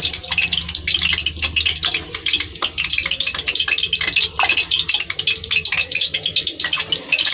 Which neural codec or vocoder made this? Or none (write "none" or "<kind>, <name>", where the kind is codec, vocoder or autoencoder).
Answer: none